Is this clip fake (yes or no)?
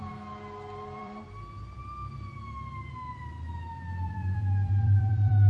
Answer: yes